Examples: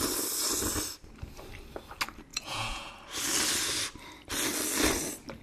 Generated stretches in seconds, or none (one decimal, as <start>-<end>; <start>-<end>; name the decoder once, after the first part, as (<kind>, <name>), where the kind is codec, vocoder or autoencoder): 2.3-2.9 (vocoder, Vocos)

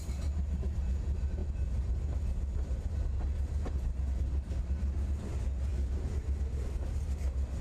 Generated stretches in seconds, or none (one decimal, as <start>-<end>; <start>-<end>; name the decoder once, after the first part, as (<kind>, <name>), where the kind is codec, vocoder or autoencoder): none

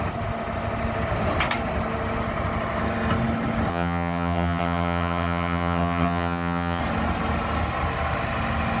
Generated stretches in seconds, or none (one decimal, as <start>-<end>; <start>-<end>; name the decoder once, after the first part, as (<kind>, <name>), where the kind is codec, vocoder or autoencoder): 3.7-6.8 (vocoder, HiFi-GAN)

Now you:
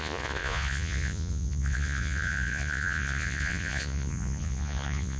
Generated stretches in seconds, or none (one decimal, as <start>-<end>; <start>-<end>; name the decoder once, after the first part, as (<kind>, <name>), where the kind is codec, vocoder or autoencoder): 0.0-5.2 (vocoder, Vocos)

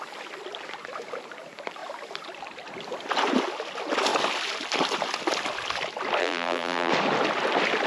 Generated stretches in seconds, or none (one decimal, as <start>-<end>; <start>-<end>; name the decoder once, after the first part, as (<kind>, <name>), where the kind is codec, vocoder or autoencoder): 6.2-6.9 (vocoder, BigVGAN v2)